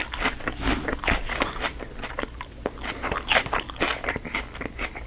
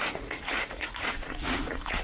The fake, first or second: second